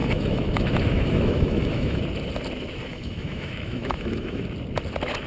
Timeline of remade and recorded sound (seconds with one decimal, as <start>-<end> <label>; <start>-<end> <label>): 0.0-2.0 remade; 2.0-2.9 recorded; 2.9-4.4 remade; 4.4-5.3 recorded